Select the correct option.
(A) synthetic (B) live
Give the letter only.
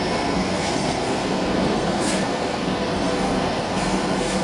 A